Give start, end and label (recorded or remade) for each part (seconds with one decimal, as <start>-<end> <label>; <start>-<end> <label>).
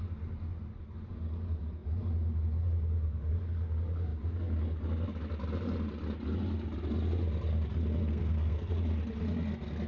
0.0-8.0 recorded; 8.0-8.7 remade; 8.7-9.9 recorded